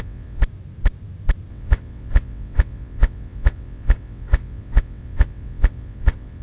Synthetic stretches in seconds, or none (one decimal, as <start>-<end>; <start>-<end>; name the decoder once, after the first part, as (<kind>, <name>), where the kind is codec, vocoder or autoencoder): 0.0-0.4 (vocoder, WaveNeXt); 1.5-6.4